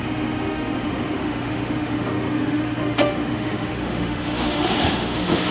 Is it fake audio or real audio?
fake